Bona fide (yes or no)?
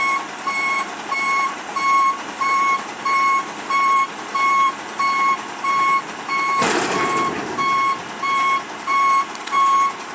no